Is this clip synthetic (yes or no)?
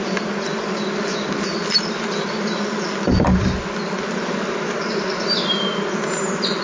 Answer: no